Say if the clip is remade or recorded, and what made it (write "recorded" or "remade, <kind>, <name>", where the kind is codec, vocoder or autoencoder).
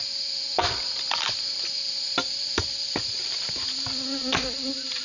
recorded